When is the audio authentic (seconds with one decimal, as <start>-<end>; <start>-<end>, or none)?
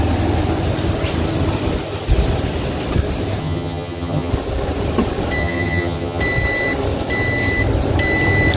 0.0-3.4; 4.3-5.4; 6.2-8.6